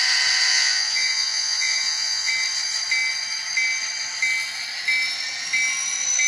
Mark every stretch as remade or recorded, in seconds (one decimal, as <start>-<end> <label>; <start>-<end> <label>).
0.0-0.5 recorded; 0.5-2.3 remade; 2.3-6.3 recorded